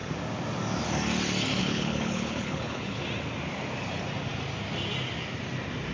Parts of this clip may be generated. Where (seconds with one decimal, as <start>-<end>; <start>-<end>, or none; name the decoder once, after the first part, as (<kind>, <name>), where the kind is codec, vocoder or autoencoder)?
1.6-3.0 (codec, HILCodec)